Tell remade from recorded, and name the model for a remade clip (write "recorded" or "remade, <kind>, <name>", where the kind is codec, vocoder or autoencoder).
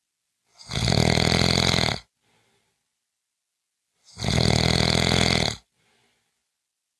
recorded